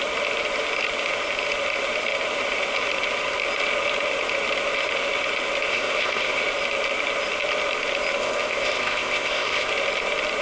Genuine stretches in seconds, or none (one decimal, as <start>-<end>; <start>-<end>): 0.0-5.7; 6.4-8.2; 9.7-10.4